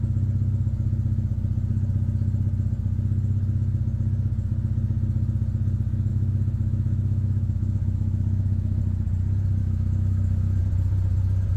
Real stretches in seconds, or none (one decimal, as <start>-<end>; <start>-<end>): 0.0-6.1; 8.8-9.6; 10.6-11.6

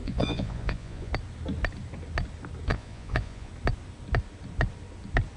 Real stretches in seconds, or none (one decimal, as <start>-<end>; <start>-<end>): 1.1-2.7; 3.5-5.4

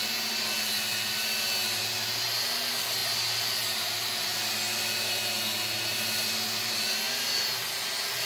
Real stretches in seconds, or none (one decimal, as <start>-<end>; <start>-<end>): 0.0-8.3

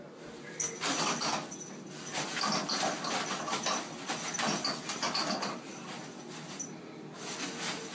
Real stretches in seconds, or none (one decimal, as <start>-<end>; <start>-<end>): 0.0-7.9

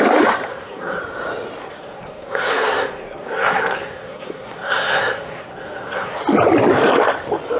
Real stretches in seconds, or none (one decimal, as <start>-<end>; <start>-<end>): 0.0-0.5; 1.0-1.6; 6.2-7.6

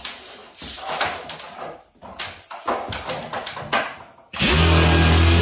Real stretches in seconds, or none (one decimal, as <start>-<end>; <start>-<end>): 0.0-5.4